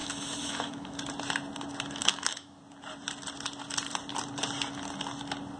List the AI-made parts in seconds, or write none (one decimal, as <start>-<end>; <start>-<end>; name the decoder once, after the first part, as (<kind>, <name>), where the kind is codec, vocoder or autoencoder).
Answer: 0.0-1.0 (autoencoder, DAC-VAE); 2.0-2.6